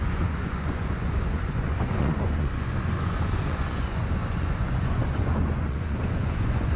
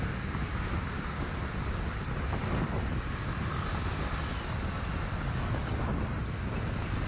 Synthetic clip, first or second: first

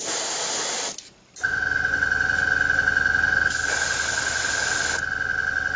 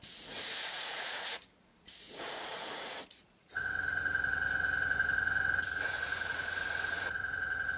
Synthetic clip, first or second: second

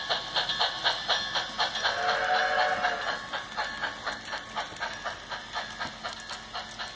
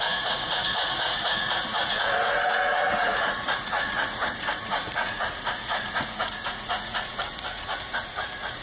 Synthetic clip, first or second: second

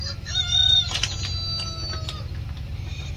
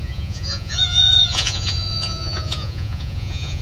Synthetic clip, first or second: second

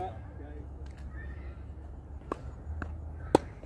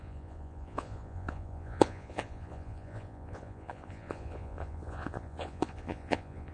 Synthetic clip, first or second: second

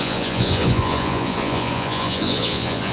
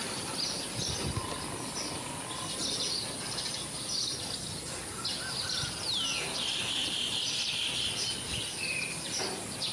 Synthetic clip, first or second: first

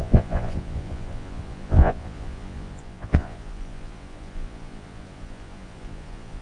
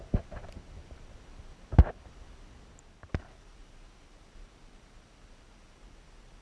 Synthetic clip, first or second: first